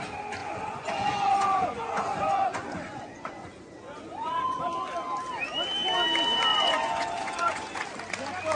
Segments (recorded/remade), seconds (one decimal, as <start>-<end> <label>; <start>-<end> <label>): 0.0-0.4 recorded; 0.4-4.6 remade; 4.6-6.5 recorded; 6.5-7.8 remade; 7.8-8.6 recorded